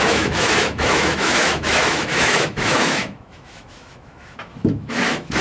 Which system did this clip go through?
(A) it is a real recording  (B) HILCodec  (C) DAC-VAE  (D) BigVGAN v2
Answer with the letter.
C